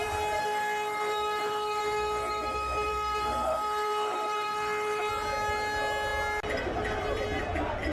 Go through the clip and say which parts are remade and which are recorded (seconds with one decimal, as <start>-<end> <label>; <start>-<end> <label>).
0.0-0.4 recorded; 0.4-5.1 remade; 5.1-7.9 recorded